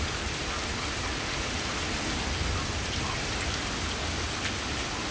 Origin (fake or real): real